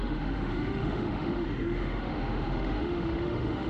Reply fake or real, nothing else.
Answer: fake